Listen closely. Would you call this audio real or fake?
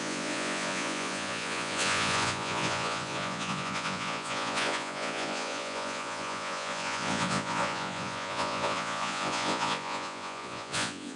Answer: fake